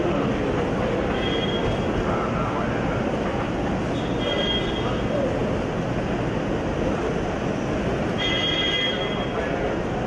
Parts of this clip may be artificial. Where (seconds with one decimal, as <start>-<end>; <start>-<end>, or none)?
none